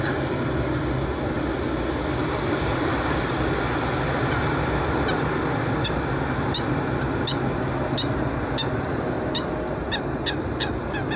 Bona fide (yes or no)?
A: yes